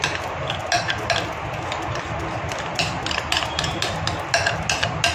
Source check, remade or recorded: recorded